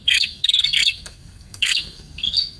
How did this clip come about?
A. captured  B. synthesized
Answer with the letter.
B